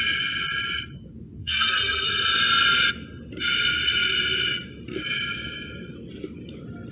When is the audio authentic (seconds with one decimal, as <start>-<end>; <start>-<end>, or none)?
0.0-1.4; 2.1-6.9